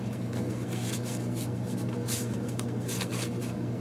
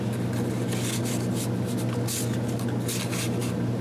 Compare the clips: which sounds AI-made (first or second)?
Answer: first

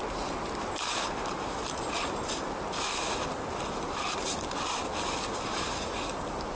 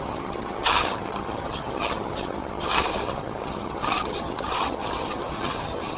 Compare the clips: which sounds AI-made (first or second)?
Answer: second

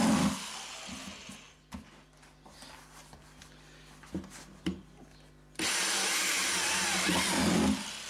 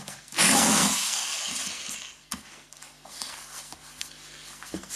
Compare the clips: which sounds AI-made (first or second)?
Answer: second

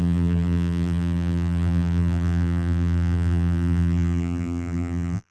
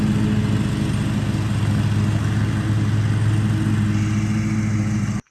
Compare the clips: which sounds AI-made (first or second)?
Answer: first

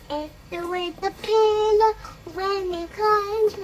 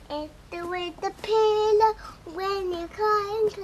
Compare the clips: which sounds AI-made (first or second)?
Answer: first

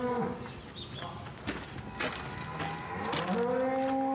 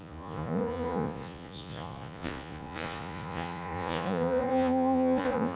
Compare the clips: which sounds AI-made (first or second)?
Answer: second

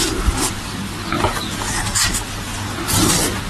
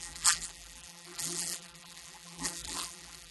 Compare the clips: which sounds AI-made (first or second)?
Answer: second